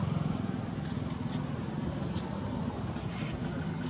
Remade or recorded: recorded